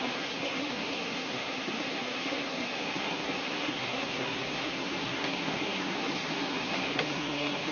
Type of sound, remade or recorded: remade